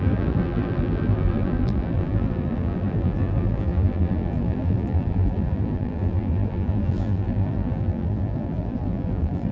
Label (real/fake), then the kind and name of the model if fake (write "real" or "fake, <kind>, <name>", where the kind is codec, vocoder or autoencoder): fake, vocoder, BigVGAN v2